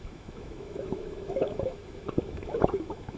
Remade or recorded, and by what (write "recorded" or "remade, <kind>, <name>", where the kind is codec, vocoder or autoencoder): remade, autoencoder, DAC-VAE